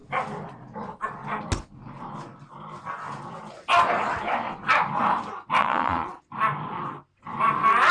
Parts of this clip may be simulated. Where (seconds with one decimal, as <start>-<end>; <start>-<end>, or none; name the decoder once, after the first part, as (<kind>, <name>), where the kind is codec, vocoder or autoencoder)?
5.6-6.2 (vocoder, Vocos)